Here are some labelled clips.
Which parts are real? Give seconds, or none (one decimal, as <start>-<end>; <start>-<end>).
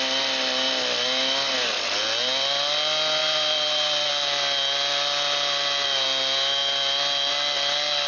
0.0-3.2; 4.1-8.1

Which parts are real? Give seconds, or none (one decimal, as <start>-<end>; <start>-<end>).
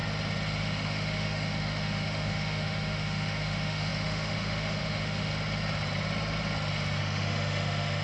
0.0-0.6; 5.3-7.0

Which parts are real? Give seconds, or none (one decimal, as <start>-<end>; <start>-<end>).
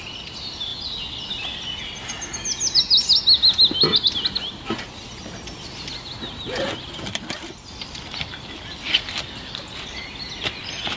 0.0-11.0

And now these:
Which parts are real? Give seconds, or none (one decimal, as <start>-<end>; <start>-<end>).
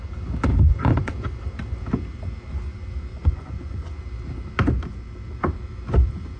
0.0-0.5; 1.1-3.1; 3.9-6.4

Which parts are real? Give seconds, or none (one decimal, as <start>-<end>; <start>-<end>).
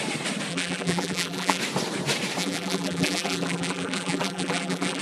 0.0-0.5; 1.6-2.4